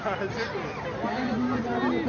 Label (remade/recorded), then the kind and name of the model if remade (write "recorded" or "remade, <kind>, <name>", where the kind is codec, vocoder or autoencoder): recorded